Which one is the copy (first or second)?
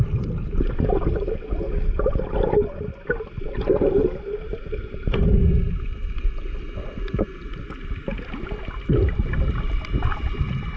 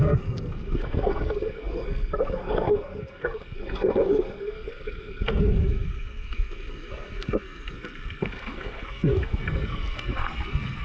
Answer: second